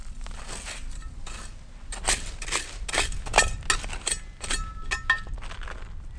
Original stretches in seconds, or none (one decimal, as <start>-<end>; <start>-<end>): 0.0-6.2